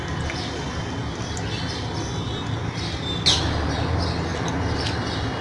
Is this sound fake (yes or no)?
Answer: no